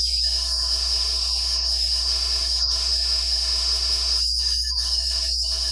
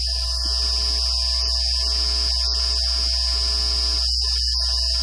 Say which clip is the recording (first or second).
second